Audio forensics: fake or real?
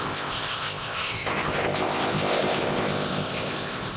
fake